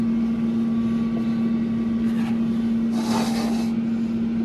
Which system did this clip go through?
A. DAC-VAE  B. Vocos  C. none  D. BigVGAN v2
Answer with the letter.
C